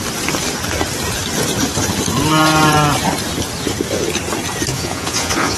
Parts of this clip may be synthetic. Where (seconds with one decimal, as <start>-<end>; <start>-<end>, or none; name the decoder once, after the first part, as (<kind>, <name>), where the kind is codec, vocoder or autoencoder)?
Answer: 4.7-5.6 (vocoder, Vocos)